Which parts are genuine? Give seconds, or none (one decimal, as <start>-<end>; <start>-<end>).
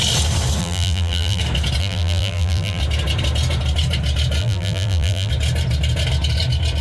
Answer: 0.0-0.6; 1.4-1.8; 2.8-4.4; 5.3-6.8